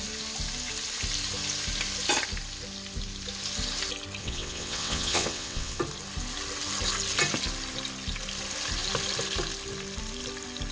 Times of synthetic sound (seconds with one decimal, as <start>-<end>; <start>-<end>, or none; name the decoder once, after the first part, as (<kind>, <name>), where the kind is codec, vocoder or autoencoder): 4.2-5.8 (vocoder, WaveNeXt)